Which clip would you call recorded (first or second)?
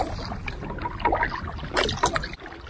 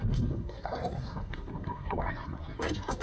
first